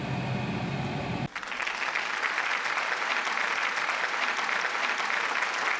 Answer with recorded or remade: recorded